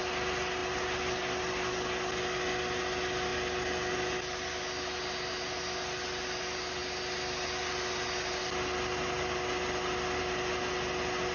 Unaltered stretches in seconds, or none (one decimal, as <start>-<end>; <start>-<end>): 0.0-11.3